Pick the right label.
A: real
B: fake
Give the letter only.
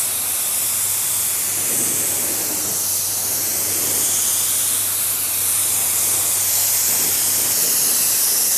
A